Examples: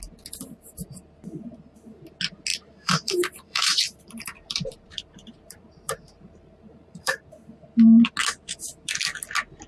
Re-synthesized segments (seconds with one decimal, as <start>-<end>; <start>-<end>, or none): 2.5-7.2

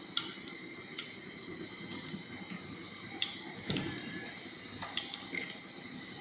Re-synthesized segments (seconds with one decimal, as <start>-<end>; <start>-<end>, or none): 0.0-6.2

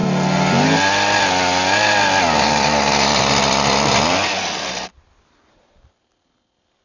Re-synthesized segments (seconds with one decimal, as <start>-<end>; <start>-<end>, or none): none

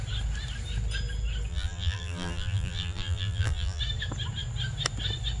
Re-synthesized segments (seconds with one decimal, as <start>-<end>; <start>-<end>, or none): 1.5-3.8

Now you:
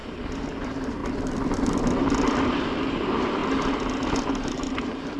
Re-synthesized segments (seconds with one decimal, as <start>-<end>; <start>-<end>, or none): 0.6-1.0; 2.9-3.4; 4.3-5.2

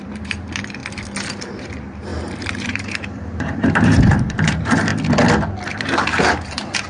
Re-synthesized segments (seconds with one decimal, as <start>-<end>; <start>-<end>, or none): 0.0-0.8; 1.6-4.9; 5.7-6.9

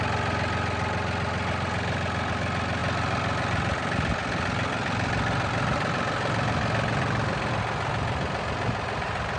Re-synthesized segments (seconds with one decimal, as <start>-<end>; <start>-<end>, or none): 2.8-7.5